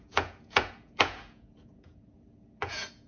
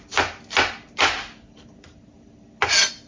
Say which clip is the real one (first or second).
second